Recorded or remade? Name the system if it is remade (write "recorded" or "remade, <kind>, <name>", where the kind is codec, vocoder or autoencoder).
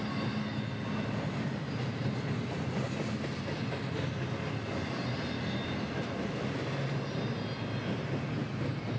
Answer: recorded